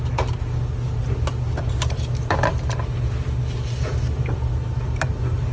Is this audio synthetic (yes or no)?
no